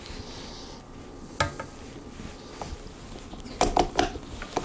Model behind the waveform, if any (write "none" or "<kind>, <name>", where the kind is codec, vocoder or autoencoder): none